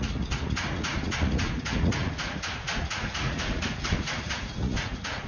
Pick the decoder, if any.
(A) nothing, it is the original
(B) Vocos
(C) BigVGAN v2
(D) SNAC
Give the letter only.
B